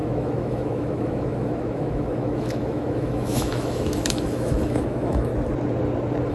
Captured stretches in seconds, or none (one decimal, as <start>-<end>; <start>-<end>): 5.3-6.3